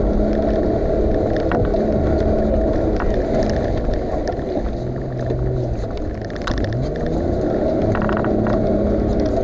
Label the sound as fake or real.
real